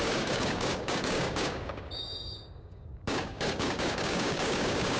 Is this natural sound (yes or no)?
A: no